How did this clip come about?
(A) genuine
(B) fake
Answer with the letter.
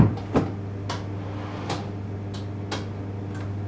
A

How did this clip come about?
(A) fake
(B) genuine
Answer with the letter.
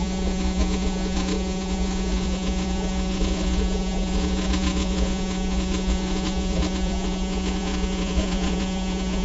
A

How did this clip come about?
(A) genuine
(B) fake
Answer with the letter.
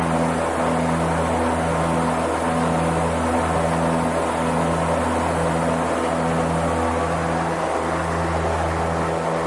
A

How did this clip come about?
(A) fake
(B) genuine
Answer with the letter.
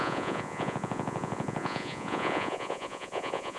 A